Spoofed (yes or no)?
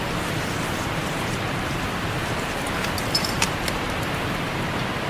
yes